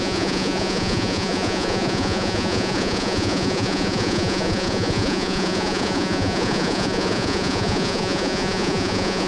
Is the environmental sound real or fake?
fake